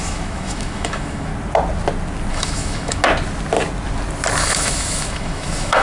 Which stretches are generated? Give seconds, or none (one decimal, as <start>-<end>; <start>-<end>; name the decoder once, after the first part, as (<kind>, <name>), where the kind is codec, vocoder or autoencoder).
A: 0.0-1.3 (autoencoder, DAC-VAE); 2.3-3.0; 4.4-5.8